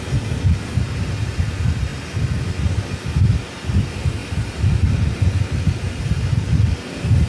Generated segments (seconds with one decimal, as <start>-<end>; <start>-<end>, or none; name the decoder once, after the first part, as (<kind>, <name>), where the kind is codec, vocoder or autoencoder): 4.2-5.7 (vocoder, BigVGAN v2)